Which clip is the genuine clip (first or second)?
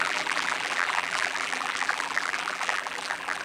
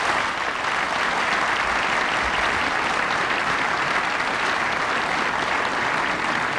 second